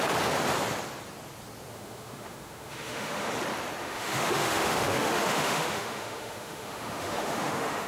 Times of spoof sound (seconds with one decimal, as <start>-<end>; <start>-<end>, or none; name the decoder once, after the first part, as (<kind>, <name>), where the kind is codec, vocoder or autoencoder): 1.7-3.3 (autoencoder, DAC-VAE); 3.8-7.9